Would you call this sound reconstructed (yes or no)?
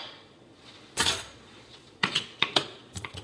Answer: yes